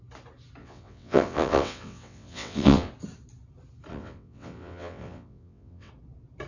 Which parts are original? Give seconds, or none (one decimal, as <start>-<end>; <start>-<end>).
0.0-0.6; 2.9-3.9; 5.9-6.5